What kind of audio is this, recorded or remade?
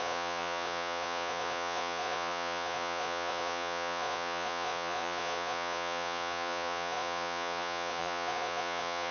remade